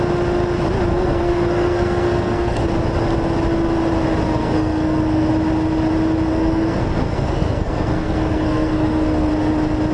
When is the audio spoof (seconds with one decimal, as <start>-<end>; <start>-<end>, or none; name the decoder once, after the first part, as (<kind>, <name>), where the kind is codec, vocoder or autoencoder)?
0.9-2.6 (codec, SNAC); 4.3-5.3; 6.3-9.3